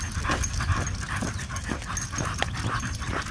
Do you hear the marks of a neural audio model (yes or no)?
no